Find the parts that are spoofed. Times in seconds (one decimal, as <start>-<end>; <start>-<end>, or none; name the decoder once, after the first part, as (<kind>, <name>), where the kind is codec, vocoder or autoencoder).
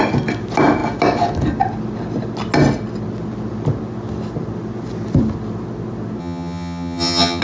6.2-7.4 (vocoder, HiFi-GAN)